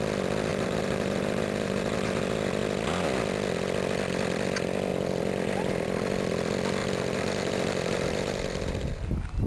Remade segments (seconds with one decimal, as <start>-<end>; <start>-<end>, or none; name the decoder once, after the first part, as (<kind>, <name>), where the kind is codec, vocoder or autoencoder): 0.5-2.2 (vocoder, BigVGAN v2); 6.8-9.1